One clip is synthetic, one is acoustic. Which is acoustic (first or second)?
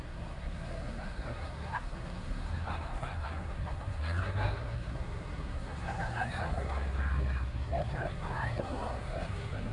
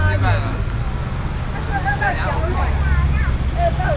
second